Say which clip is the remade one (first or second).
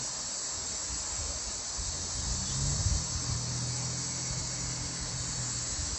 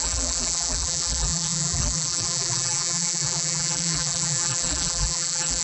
second